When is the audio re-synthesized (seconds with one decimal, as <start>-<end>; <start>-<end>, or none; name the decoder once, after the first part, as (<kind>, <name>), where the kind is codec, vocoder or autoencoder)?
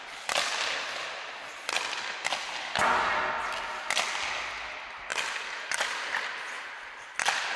none